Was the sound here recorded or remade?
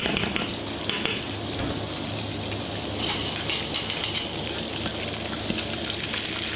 recorded